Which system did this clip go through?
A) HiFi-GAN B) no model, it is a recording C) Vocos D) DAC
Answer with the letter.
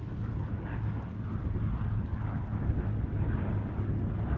B